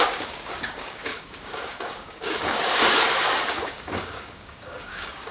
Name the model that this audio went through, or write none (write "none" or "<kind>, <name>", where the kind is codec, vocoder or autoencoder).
codec, DAC